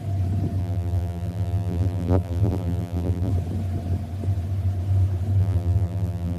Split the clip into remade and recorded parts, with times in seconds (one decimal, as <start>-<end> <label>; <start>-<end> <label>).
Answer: 0.0-0.6 recorded; 0.6-3.3 remade; 3.3-5.4 recorded; 5.4-6.4 remade